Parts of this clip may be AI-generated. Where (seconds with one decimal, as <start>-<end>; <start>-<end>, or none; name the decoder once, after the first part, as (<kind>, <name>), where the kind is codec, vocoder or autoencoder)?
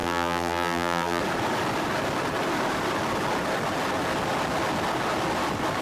0.0-1.2 (vocoder, BigVGAN v2)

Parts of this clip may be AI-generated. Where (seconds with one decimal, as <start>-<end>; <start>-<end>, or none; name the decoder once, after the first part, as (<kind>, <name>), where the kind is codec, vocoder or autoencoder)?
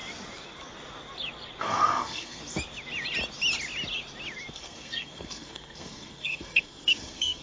1.6-2.4 (codec, SNAC); 4.5-7.4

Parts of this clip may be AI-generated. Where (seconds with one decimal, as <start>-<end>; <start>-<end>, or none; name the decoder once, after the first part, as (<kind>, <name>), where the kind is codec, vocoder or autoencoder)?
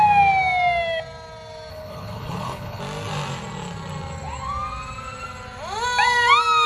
1.7-2.8 (codec, HILCodec)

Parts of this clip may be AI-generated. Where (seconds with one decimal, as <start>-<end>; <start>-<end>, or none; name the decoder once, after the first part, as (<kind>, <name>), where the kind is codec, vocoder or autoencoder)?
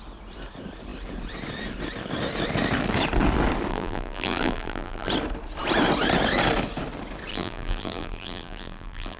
3.7-5.1 (vocoder, BigVGAN v2); 7.3-9.2